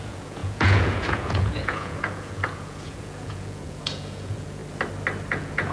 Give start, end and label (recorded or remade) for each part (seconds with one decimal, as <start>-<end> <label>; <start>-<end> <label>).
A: 0.0-4.6 remade; 4.6-5.3 recorded; 5.3-5.7 remade